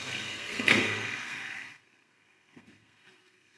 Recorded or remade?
remade